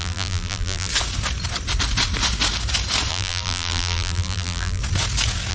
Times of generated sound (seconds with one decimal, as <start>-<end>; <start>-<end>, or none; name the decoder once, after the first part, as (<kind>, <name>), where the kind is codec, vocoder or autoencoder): 0.0-0.9 (vocoder, BigVGAN v2); 3.1-4.8

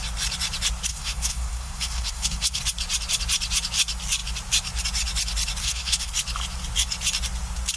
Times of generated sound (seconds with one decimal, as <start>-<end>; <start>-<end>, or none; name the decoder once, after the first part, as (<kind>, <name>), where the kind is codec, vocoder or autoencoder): 0.9-2.6 (codec, SNAC); 5.6-6.1

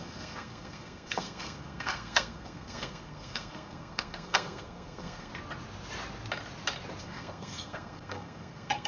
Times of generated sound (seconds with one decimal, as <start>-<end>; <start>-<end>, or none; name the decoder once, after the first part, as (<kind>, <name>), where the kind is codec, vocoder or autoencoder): 0.0-5.3 (codec, SNAC); 7.0-8.9

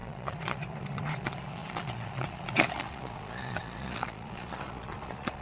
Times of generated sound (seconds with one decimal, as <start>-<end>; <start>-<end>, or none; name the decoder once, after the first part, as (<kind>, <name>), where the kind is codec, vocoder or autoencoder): 0.0-5.4 (vocoder, Vocos)

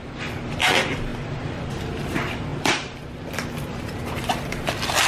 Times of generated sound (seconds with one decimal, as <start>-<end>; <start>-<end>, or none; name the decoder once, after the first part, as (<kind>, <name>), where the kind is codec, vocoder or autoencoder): 0.0-5.1 (vocoder, BigVGAN v2)

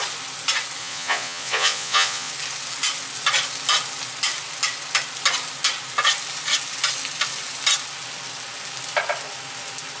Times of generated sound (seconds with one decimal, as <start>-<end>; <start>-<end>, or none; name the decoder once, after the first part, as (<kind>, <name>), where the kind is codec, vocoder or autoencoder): 0.8-2.3 (vocoder, Vocos)

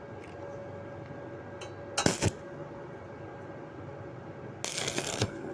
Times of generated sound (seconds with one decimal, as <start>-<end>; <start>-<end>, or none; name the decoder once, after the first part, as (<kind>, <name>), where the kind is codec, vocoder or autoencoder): 4.7-5.5 (codec, SNAC)

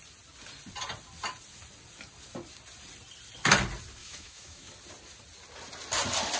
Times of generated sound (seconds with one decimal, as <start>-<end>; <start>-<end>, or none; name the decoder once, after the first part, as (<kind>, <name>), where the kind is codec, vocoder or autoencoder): 4.0-4.7 (autoencoder, DAC-VAE)